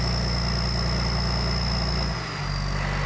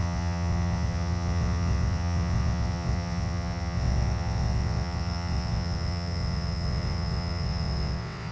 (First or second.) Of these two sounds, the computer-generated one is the second